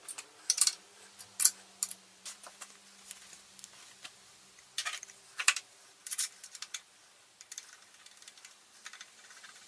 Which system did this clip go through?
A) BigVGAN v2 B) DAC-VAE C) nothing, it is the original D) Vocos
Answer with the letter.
C